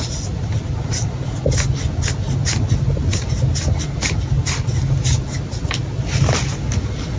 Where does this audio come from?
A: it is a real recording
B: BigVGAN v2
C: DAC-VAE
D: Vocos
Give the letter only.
A